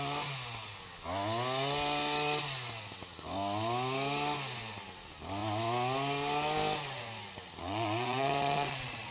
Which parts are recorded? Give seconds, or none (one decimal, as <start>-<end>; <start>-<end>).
0.0-7.6